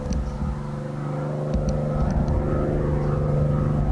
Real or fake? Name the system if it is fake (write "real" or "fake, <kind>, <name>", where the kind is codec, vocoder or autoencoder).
real